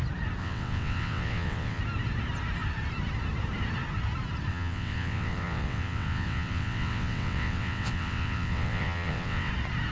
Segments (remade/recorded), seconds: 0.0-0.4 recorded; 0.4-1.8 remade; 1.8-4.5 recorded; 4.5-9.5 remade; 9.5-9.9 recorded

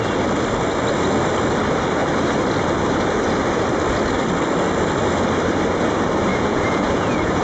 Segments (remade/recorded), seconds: 0.0-6.3 recorded; 6.3-7.4 remade

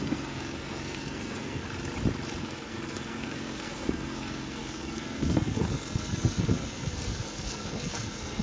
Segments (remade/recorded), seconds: 0.0-1.6 remade; 1.6-2.4 recorded; 2.4-8.4 remade

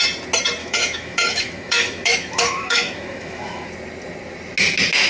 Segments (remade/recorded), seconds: 0.0-0.6 recorded; 0.6-3.7 remade; 3.7-5.1 recorded